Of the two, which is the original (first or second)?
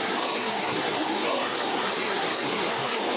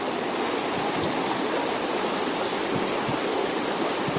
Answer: second